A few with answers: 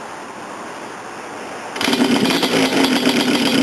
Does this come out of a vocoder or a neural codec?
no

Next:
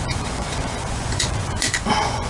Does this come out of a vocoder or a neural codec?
yes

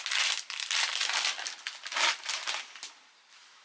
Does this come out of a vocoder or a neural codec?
no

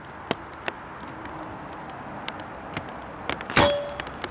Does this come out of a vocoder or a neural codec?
no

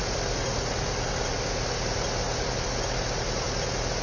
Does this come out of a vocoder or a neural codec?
no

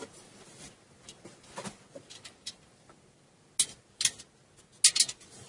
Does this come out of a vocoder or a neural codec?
no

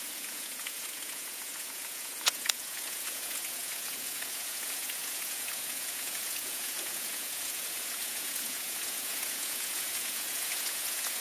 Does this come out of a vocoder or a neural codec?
yes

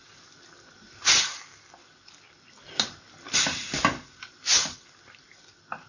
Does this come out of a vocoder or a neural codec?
no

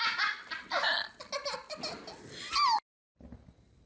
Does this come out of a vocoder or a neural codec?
no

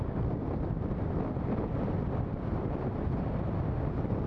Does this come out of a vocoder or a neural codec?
no